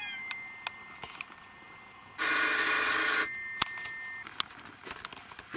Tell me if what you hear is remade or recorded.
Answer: recorded